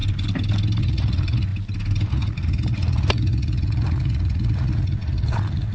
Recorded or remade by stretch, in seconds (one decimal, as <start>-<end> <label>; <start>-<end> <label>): 0.0-0.8 recorded; 0.8-1.5 remade; 1.5-2.1 recorded; 2.1-5.7 remade